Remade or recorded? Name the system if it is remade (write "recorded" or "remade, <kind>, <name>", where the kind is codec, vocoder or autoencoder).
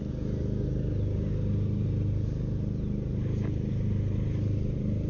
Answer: recorded